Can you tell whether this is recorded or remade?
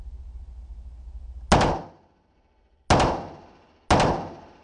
recorded